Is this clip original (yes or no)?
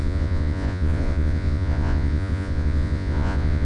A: no